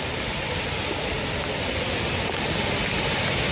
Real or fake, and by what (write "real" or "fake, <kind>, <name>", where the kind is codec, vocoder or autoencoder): real